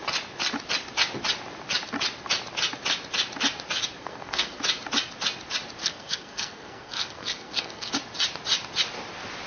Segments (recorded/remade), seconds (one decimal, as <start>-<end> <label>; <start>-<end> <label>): 0.0-4.0 recorded; 4.0-4.6 remade; 4.6-5.8 recorded; 5.8-7.9 remade; 7.9-9.5 recorded